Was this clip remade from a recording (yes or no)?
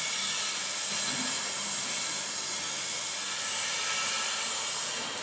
yes